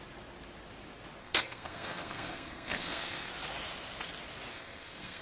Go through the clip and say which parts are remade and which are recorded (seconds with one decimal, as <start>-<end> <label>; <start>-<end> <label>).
0.0-1.2 recorded; 1.2-3.3 remade; 3.3-4.5 recorded; 4.5-5.2 remade